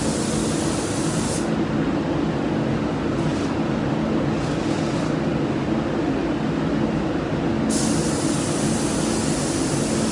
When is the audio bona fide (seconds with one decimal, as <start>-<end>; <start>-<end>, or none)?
0.0-10.1